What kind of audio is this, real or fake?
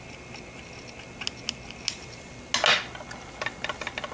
real